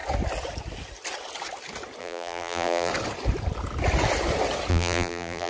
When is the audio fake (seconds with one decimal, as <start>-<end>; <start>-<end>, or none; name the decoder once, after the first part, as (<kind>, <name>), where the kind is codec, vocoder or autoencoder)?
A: 2.0-2.9 (vocoder, BigVGAN v2); 4.7-5.5